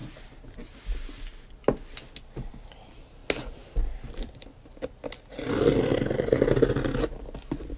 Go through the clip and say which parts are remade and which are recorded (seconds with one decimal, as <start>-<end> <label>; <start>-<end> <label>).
0.0-7.8 recorded